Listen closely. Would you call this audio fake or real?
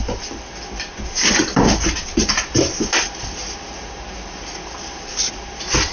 real